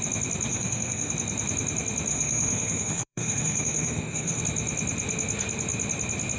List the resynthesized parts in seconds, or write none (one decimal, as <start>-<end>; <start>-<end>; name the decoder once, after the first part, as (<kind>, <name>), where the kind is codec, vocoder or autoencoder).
0.5-1.1 (codec, SNAC); 2.1-4.4